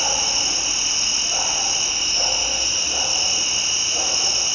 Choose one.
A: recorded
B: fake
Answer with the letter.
A